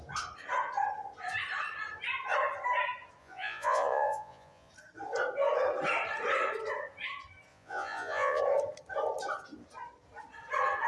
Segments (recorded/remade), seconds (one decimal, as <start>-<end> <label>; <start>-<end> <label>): 0.0-3.2 recorded; 3.2-4.7 remade; 4.7-7.5 recorded; 7.5-8.4 remade; 8.4-10.9 recorded